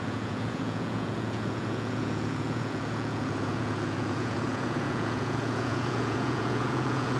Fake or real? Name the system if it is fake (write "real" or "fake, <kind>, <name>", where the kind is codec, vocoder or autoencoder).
fake, vocoder, Vocos